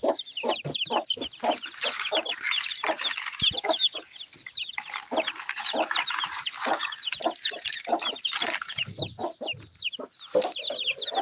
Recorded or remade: recorded